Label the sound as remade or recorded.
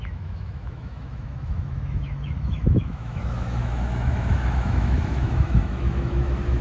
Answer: remade